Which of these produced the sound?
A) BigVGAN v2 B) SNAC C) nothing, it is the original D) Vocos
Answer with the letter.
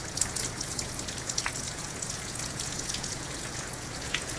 D